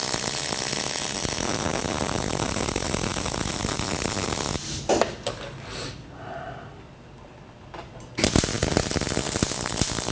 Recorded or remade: recorded